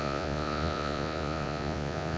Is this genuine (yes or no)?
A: no